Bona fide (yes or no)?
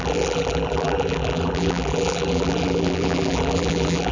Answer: no